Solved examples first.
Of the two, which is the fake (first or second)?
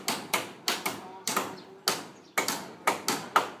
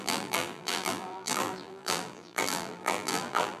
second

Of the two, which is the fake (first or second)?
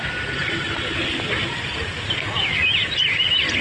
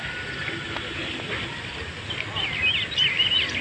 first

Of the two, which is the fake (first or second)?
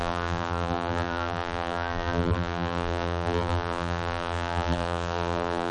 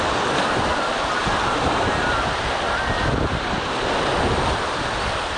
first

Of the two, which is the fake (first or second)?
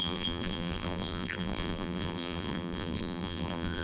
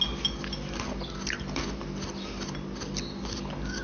first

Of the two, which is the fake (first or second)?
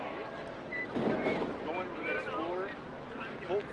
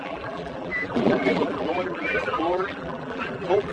second